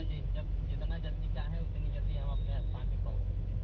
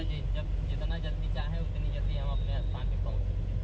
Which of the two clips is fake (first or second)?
first